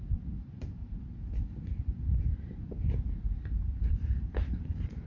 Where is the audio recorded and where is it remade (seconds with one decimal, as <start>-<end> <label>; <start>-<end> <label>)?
0.0-0.8 remade; 0.8-3.9 recorded; 3.9-5.1 remade